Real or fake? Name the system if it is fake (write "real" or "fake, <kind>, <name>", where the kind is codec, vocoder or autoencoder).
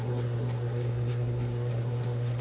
fake, codec, SNAC